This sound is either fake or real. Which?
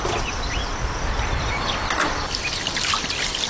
real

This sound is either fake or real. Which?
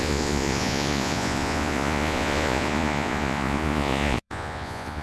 fake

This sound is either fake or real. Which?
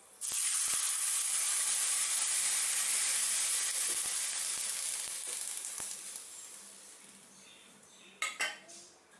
fake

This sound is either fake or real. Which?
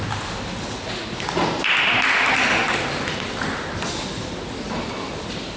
real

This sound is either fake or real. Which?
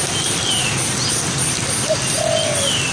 real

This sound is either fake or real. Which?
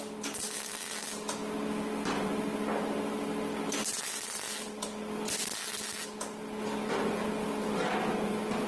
real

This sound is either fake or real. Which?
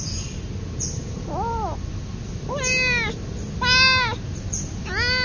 real